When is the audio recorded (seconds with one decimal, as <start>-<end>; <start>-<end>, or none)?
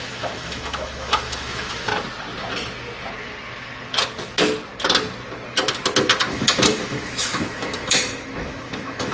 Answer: 1.9-6.3